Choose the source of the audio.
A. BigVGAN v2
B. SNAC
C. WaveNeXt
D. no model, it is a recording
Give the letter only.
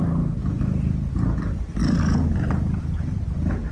D